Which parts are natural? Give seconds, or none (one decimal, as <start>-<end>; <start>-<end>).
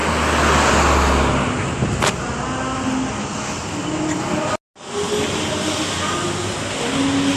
0.0-7.4